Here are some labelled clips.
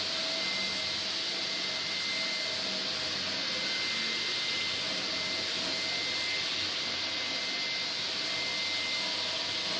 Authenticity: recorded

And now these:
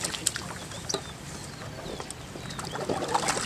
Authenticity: recorded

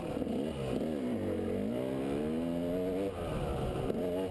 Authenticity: recorded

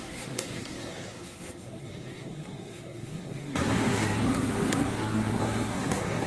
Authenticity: remade